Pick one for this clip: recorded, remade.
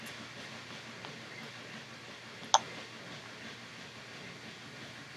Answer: recorded